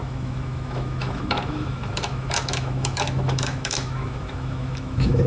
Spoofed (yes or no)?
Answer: yes